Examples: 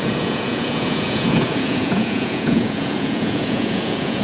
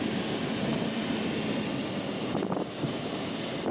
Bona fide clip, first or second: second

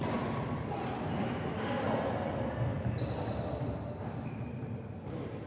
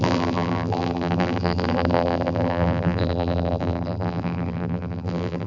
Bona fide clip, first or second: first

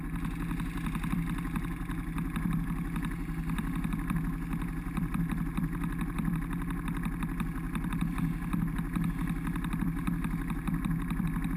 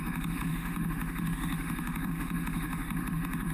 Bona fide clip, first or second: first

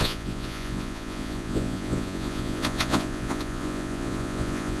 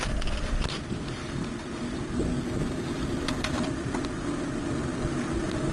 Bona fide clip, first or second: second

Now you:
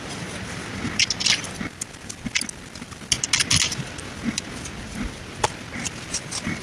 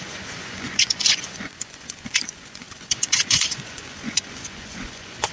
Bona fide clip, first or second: first